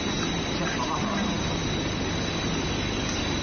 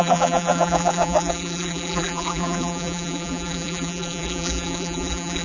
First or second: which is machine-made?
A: second